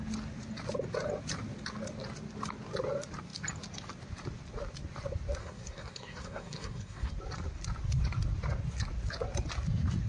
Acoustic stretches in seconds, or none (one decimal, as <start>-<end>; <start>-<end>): 0.0-5.4; 7.1-10.1